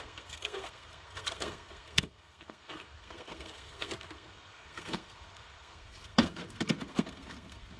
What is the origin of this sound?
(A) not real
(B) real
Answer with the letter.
A